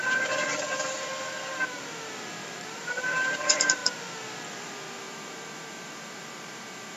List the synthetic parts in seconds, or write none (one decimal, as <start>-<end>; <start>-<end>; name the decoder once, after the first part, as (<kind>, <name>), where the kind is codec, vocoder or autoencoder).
0.0-1.1 (vocoder, BigVGAN v2); 2.8-3.8; 4.5-7.0